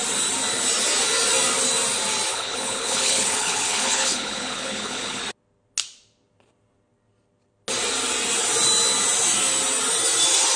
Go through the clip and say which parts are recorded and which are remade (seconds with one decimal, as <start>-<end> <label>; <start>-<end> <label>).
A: 0.0-2.3 recorded; 2.3-5.2 remade; 5.2-10.6 recorded